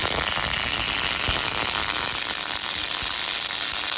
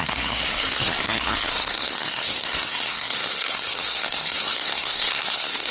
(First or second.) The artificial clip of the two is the second